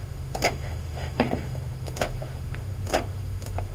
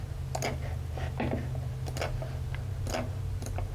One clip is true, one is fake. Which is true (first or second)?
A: second